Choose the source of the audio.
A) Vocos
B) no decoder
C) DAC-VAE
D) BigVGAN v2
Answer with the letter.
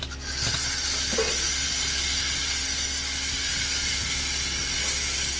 B